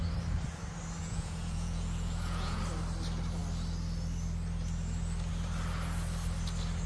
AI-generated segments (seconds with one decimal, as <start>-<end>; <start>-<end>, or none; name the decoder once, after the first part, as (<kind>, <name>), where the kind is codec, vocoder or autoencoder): 1.0-2.6 (vocoder, Vocos)

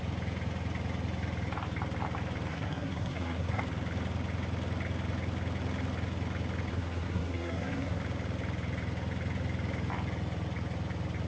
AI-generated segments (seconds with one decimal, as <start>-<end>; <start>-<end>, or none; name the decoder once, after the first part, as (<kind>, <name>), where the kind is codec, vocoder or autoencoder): 2.5-3.6 (codec, SNAC); 6.7-8.0

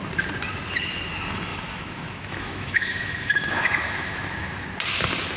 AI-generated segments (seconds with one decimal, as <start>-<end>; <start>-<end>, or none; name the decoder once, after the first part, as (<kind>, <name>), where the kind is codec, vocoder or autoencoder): 1.5-4.7 (autoencoder, DAC-VAE)

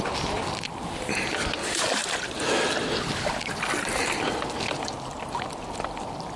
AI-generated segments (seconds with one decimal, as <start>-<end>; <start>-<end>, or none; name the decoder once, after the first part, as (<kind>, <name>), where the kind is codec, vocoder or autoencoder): none